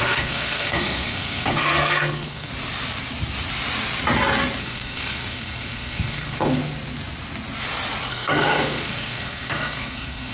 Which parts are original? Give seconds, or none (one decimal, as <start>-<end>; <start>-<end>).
2.5-4.6; 6.6-8.1